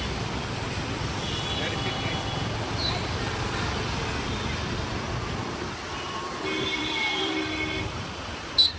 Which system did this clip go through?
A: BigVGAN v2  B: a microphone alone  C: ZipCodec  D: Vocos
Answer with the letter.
A